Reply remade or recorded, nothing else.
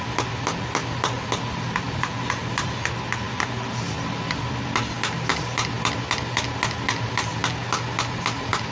recorded